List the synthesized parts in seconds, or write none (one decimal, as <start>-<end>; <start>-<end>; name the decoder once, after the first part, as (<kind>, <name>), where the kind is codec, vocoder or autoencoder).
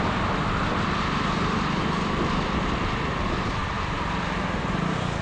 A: none